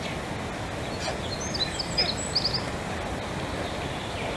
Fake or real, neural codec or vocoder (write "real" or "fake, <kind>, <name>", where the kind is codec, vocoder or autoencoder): real